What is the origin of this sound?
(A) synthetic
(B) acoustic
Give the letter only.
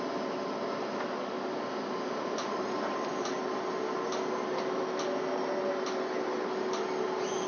B